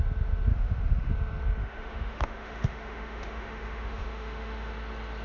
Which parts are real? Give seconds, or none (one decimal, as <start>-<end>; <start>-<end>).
0.0-0.5; 1.1-1.6; 4.7-5.2